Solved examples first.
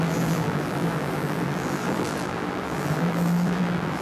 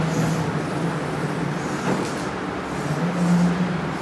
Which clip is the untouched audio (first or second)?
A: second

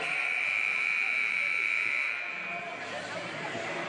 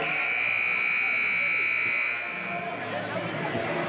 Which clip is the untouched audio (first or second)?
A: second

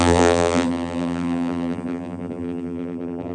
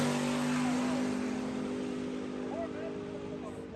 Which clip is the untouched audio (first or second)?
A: second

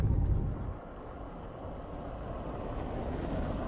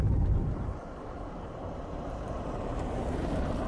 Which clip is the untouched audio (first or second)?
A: first